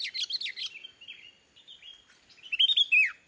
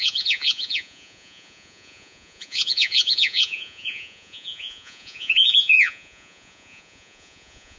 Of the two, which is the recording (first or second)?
first